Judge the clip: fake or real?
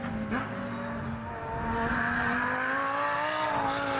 real